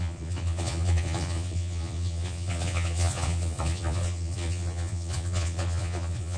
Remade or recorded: remade